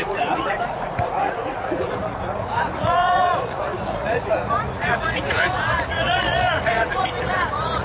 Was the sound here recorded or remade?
remade